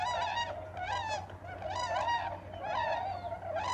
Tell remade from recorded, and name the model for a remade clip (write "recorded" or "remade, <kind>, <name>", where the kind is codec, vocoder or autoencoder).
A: recorded